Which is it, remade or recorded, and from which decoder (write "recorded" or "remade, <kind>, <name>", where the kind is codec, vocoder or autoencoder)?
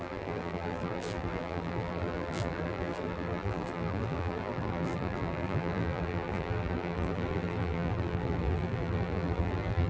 remade, vocoder, BigVGAN v2